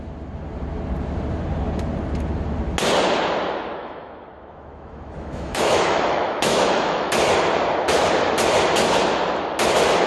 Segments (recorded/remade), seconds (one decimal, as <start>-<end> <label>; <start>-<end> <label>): 0.0-3.8 recorded; 3.8-7.1 remade; 7.1-10.1 recorded